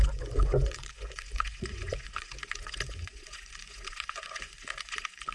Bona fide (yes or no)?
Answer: no